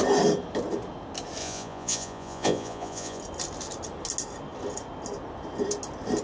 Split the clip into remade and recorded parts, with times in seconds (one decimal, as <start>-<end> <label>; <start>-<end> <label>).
0.0-1.4 recorded; 1.4-3.2 remade; 3.2-6.2 recorded